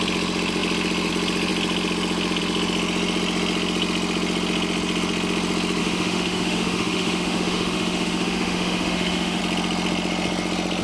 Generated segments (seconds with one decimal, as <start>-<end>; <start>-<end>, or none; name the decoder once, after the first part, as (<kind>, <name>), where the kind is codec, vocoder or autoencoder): 5.8-9.4 (autoencoder, DAC-VAE)